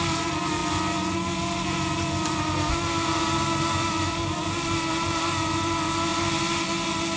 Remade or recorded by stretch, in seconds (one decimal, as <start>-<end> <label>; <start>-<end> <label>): 0.0-7.2 recorded